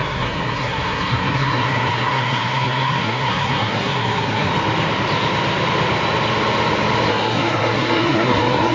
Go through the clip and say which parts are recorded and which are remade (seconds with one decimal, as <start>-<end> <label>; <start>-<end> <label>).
0.0-4.5 remade; 4.5-7.1 recorded; 7.1-8.7 remade